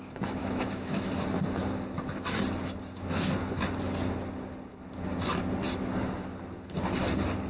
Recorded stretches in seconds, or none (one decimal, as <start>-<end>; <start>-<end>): 0.0-0.4; 1.1-7.5

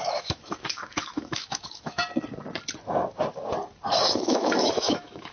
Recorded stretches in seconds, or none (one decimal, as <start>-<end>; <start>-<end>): 2.0-4.1